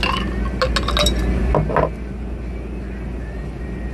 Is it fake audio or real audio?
real